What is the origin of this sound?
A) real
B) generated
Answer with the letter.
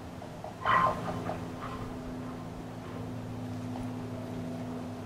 A